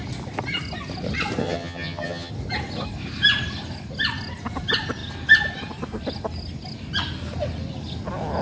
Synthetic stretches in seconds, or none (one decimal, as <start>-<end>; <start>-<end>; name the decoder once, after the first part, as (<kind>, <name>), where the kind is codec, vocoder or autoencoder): 1.4-2.3 (vocoder, HiFi-GAN)